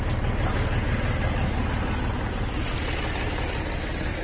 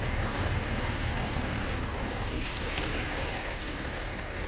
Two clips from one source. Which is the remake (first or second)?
second